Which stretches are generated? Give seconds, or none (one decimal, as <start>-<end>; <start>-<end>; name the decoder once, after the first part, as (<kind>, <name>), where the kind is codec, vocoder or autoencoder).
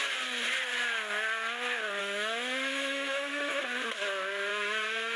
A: 2.0-3.6 (autoencoder, DAC-VAE); 4.5-5.2